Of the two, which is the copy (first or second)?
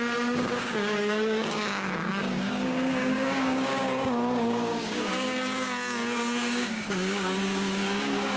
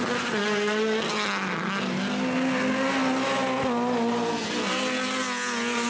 first